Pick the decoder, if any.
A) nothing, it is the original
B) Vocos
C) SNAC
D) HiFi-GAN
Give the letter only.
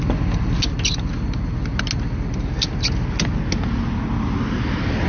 A